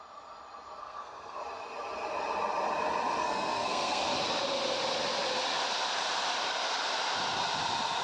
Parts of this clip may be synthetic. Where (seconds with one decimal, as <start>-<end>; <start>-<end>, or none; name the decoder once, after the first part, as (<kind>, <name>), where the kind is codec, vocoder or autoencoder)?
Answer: 0.8-1.4 (codec, SNAC); 3.2-4.0